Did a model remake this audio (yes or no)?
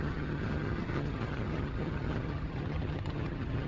yes